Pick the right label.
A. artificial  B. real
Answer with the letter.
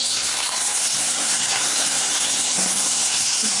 A